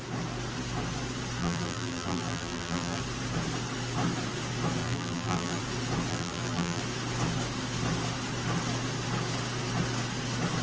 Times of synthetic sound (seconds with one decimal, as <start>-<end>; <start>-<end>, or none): 1.4-3.0; 4.8-5.6; 6.1-6.8